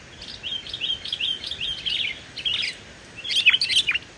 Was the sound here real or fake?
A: real